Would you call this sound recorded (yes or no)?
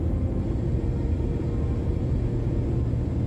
yes